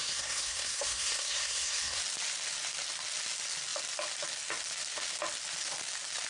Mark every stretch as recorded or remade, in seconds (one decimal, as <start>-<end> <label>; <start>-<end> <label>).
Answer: 0.0-2.0 remade; 2.0-6.3 recorded